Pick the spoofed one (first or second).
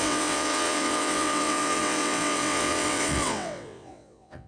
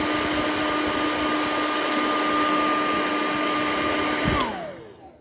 first